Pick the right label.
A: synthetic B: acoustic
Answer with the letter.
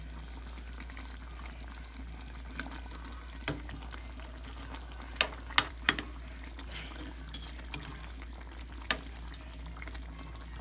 B